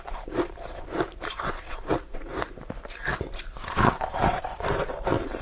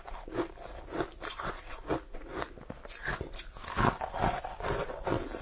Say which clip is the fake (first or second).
first